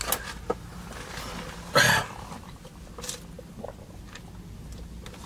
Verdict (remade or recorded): recorded